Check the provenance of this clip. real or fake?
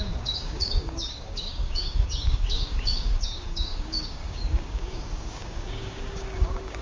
fake